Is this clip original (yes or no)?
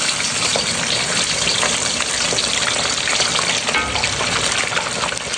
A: yes